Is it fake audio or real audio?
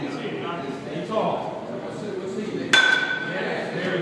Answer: real